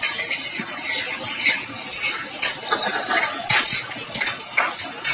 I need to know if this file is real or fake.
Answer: real